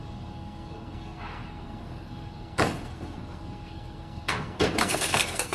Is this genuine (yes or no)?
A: no